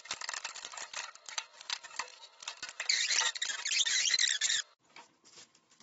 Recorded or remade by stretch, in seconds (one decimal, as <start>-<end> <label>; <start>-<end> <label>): 0.0-5.8 recorded